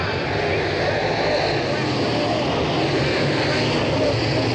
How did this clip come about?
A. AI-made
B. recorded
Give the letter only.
B